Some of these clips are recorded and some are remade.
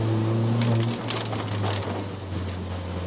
recorded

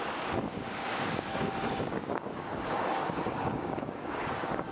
remade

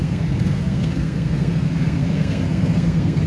remade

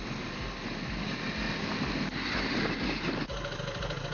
recorded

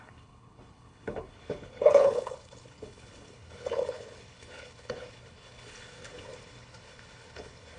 remade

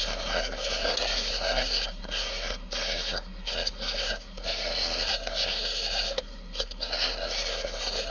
remade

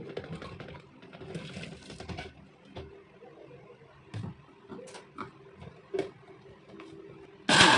recorded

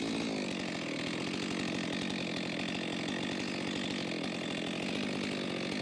recorded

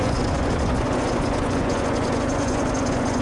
remade